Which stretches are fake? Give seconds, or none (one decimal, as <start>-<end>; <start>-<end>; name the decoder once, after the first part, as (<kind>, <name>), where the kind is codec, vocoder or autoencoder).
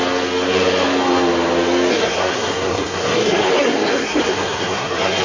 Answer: 1.9-5.2 (codec, SNAC)